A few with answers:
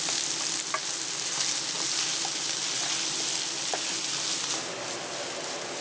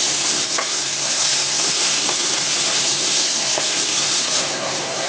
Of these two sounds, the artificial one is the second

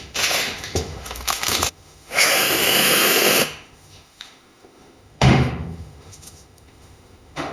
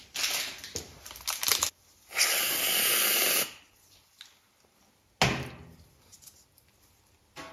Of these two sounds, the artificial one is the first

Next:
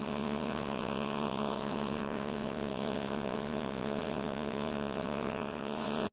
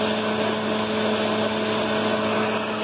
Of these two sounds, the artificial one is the first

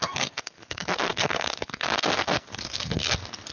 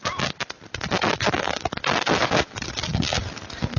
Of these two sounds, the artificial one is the first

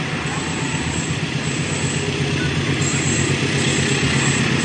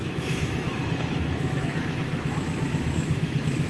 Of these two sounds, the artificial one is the second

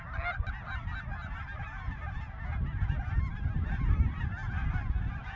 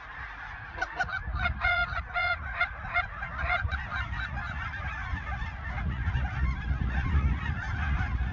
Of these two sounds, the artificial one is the second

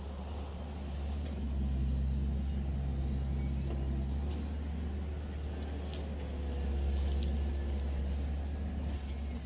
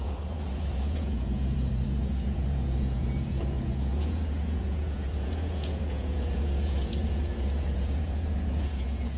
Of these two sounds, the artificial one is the second